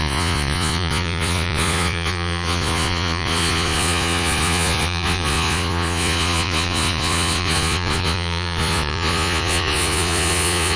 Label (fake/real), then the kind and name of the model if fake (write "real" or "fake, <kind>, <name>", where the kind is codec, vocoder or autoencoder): fake, vocoder, Vocos